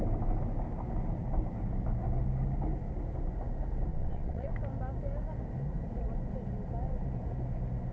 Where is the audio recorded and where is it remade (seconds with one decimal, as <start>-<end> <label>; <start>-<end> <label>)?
0.0-3.9 recorded; 3.9-4.5 remade; 4.5-7.9 recorded